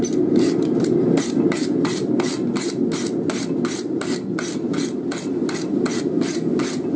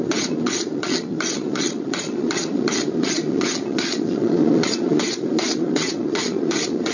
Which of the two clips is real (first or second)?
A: first